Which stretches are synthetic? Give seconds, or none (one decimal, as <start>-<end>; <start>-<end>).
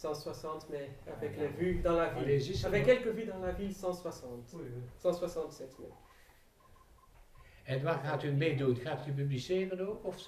5.4-6.9